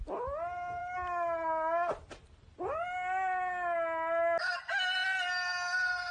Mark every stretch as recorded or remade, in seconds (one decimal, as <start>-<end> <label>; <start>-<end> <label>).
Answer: 0.0-6.1 recorded